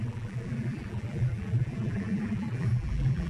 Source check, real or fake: fake